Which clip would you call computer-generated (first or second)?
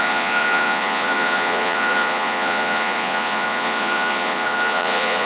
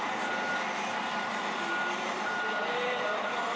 first